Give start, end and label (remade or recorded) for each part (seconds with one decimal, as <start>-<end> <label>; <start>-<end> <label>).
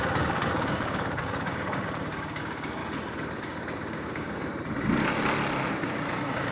0.0-2.8 remade; 2.8-3.3 recorded; 3.3-4.5 remade; 4.5-6.1 recorded; 6.1-6.5 remade